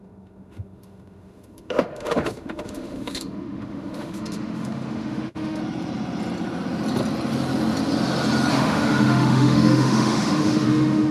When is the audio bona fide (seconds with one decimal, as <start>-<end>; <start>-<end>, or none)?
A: 5.6-8.5